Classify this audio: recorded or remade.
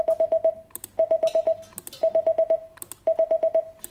recorded